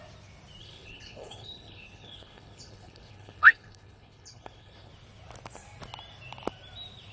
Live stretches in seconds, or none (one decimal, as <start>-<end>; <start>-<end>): 0.0-0.6; 4.9-7.1